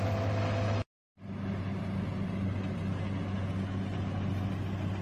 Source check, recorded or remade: recorded